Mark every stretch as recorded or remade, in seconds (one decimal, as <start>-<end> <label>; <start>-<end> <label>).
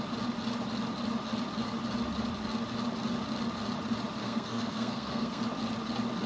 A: 0.0-4.2 recorded; 4.2-5.4 remade; 5.4-6.3 recorded